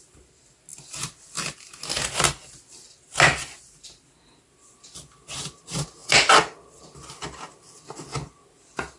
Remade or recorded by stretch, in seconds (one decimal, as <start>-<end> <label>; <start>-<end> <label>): 0.0-6.0 recorded; 6.0-6.9 remade; 6.9-9.0 recorded